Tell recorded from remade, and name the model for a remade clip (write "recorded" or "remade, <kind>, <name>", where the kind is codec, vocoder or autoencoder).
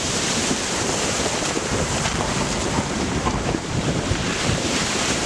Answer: remade, vocoder, BigVGAN v2